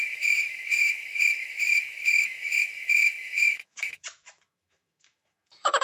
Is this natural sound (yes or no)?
no